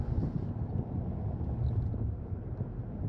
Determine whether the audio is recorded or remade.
recorded